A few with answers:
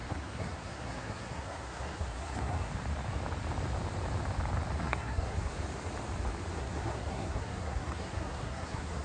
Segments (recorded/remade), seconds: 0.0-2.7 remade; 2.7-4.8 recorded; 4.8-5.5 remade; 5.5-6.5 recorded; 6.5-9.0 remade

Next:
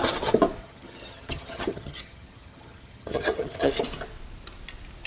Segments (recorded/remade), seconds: 0.0-0.6 recorded; 0.6-3.7 remade; 3.7-5.1 recorded

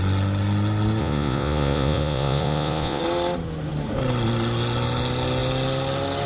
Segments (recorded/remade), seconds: 0.0-1.0 recorded; 1.0-3.0 remade; 3.0-6.3 recorded

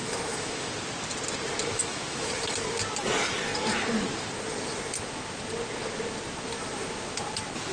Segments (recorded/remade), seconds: 0.0-0.7 remade; 0.7-1.7 recorded; 1.7-2.3 remade; 2.3-7.7 recorded

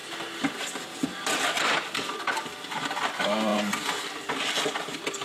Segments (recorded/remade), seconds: 0.0-5.2 recorded

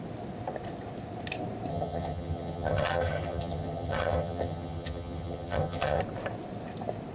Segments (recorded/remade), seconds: 0.0-1.7 recorded; 1.7-6.0 remade; 6.0-7.1 recorded

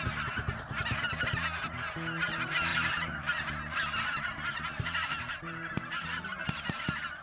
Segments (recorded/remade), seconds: 0.0-2.7 recorded; 2.7-5.7 remade; 5.7-7.2 recorded

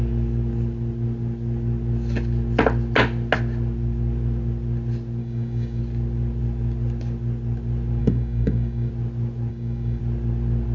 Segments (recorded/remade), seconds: 0.0-5.2 recorded; 5.2-5.8 remade; 5.8-8.0 recorded; 8.0-8.9 remade; 8.9-9.5 recorded; 9.5-10.0 remade; 10.0-10.7 recorded